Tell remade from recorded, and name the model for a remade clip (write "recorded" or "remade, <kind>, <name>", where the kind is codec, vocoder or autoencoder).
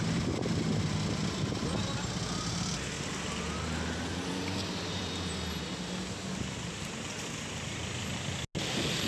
recorded